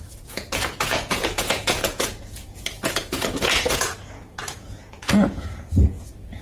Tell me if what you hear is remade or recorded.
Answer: remade